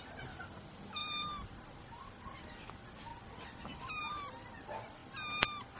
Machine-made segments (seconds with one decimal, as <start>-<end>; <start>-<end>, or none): 1.0-2.2; 3.1-4.0